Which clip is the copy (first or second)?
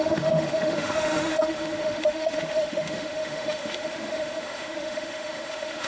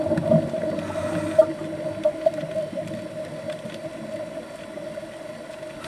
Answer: first